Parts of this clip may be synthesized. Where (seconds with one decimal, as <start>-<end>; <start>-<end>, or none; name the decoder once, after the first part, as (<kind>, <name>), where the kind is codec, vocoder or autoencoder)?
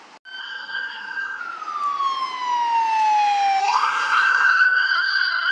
0.4-1.4 (codec, SNAC); 3.6-5.5